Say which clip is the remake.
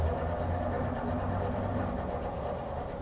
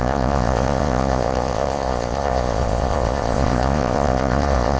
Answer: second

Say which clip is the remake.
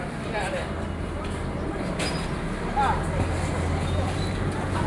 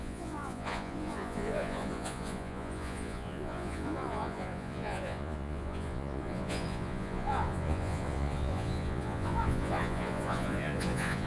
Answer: second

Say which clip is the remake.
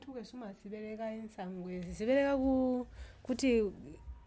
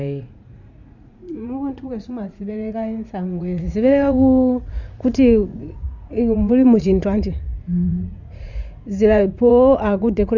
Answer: second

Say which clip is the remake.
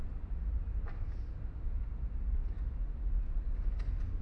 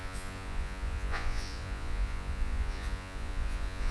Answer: second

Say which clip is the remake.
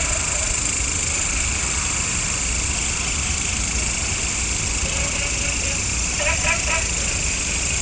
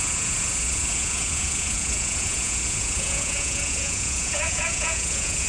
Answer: second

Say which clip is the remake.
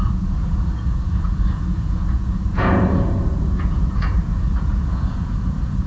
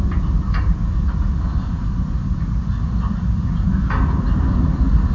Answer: first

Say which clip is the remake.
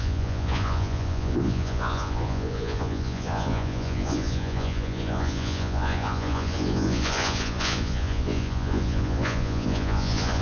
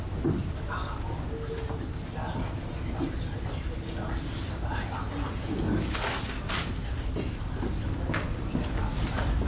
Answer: first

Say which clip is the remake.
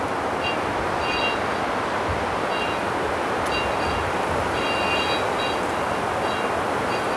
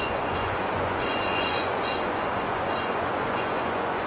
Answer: second